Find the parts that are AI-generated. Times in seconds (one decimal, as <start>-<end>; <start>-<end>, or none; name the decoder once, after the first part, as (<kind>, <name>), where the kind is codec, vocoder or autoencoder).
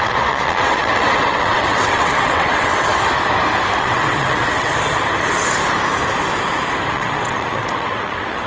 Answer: 0.0-2.9 (vocoder, WaveNeXt); 3.8-4.7; 6.9-8.5